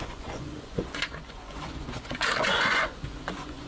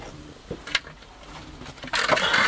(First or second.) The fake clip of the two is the first